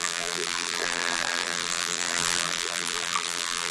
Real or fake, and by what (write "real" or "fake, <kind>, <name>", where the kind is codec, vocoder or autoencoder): fake, vocoder, BigVGAN v2